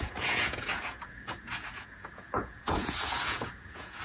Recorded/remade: remade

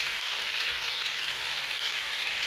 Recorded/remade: remade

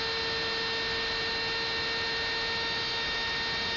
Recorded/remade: recorded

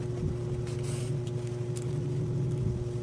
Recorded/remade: recorded